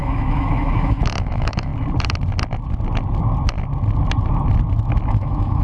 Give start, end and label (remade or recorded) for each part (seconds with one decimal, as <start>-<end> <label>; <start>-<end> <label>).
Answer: 0.0-1.7 remade; 1.7-5.1 recorded; 5.1-5.6 remade